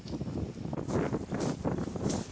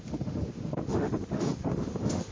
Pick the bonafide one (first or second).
first